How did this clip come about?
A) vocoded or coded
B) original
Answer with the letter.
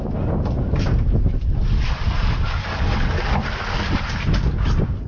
B